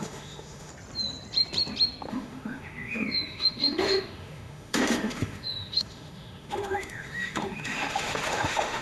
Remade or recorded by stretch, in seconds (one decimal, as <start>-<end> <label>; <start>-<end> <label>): 0.0-0.7 remade; 0.7-2.1 recorded; 2.1-8.8 remade